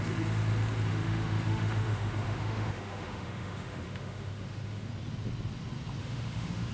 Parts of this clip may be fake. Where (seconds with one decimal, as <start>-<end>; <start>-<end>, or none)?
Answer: 0.9-4.9; 6.0-6.7